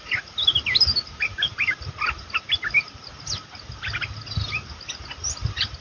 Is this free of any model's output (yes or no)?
yes